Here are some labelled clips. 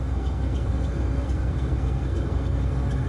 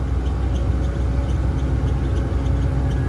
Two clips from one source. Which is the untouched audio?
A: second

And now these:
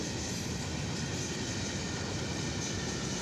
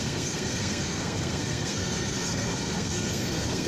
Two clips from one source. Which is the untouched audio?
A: first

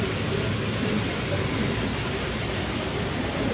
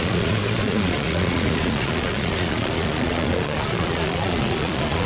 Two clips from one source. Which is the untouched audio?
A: first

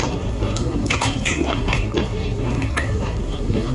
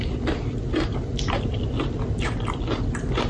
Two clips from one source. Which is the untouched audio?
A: second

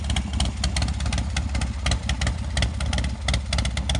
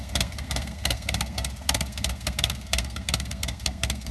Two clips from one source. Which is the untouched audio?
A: first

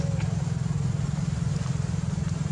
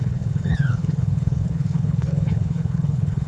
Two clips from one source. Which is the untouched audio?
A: first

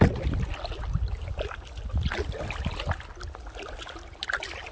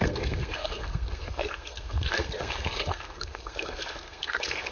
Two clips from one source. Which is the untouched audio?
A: first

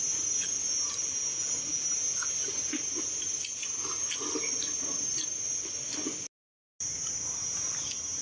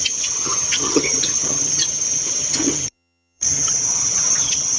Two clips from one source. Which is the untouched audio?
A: first